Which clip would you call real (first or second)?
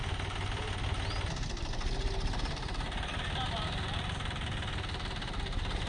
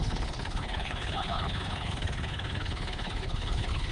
first